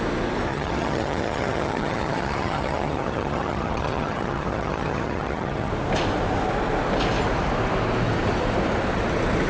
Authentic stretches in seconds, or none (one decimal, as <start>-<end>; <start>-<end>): 0.0-0.5; 5.7-9.5